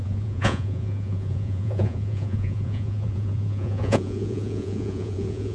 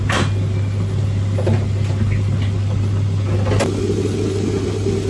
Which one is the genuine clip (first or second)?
second